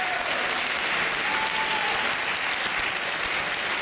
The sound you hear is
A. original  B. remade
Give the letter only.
A